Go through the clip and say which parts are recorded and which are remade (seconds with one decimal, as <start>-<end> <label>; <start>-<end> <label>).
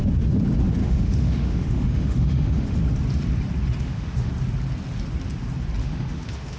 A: 0.0-0.8 recorded; 0.8-2.8 remade; 2.8-3.8 recorded; 3.8-4.3 remade; 4.3-5.8 recorded; 5.8-6.6 remade